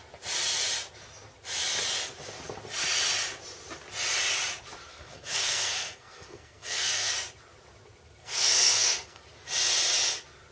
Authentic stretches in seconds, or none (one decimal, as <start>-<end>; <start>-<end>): 0.0-4.9; 7.1-8.2; 9.2-10.5